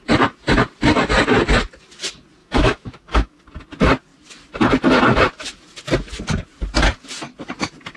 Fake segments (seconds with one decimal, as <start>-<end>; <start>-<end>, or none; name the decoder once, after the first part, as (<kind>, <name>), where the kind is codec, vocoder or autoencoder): 2.4-3.4 (autoencoder, DAC-VAE)